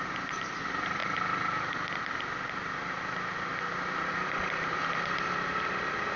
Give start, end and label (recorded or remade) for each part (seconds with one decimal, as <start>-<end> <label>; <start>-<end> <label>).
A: 0.0-6.2 recorded